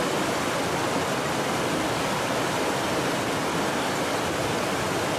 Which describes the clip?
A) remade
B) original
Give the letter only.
B